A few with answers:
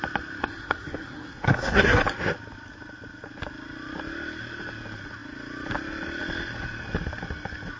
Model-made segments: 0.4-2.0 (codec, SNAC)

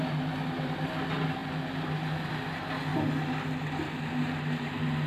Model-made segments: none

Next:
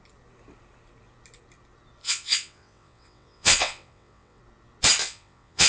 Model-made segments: 2.0-4.4 (vocoder, WaveNeXt); 5.0-5.7

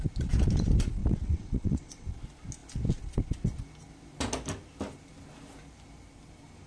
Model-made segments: 1.0-2.1 (vocoder, WaveNeXt)

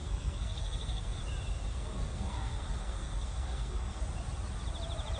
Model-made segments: 0.0-1.2 (codec, SNAC); 1.7-4.0

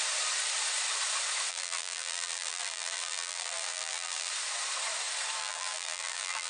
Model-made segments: 1.5-4.3 (vocoder, BigVGAN v2); 5.4-6.5

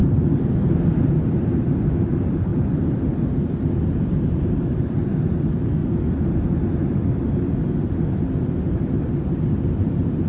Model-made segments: 0.0-2.5 (vocoder, BigVGAN v2); 4.5-10.3

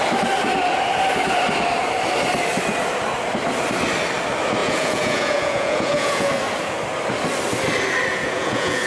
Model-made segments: 4.6-6.3 (vocoder, Vocos); 8.1-8.9